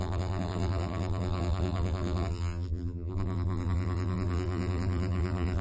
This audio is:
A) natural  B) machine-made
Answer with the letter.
B